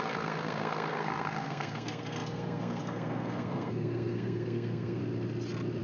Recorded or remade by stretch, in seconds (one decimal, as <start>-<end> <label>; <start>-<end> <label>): 0.0-5.0 remade; 5.0-5.8 recorded

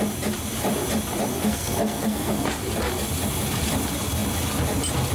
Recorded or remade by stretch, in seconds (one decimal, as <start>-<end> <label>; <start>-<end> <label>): 0.0-1.3 recorded; 1.3-2.6 remade; 2.6-5.1 recorded

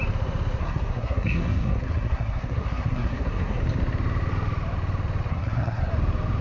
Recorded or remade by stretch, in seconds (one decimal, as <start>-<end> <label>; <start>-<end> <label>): 0.0-0.6 recorded; 0.6-3.6 remade; 3.6-5.3 recorded; 5.3-5.9 remade; 5.9-6.4 recorded

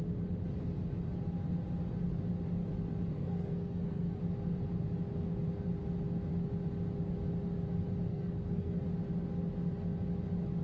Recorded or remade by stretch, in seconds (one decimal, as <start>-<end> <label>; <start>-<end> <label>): 0.0-3.1 recorded; 3.1-4.2 remade; 4.2-8.1 recorded; 8.1-8.8 remade; 8.8-10.6 recorded

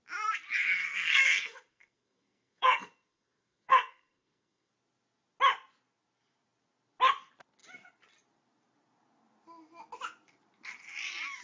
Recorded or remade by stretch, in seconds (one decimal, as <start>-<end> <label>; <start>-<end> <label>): 0.0-0.5 recorded; 0.5-4.7 remade; 4.7-11.4 recorded

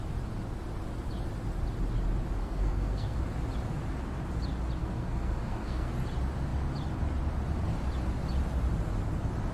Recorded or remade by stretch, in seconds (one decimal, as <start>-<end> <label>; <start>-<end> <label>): 0.0-2.4 recorded; 2.4-3.2 remade; 3.2-4.8 recorded; 4.8-5.9 remade; 5.9-9.5 recorded

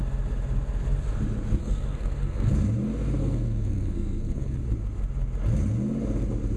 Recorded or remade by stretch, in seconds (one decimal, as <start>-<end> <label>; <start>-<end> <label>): 0.0-1.6 recorded; 1.6-2.5 remade; 2.5-3.2 recorded; 3.2-4.6 remade; 4.6-6.6 recorded